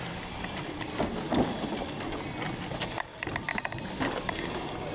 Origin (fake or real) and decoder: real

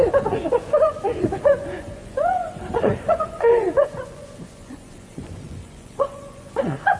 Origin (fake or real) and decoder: fake, vocoder, Vocos